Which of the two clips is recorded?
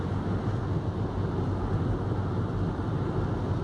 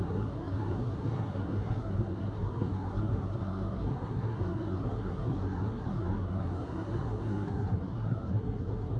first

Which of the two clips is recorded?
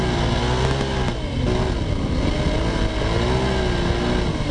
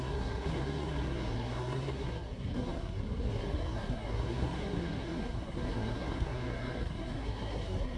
first